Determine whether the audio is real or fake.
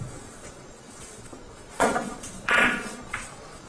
fake